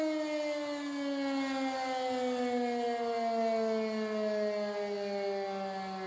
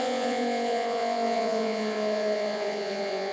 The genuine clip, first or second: first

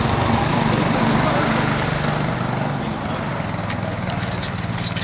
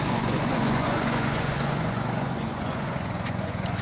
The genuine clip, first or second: first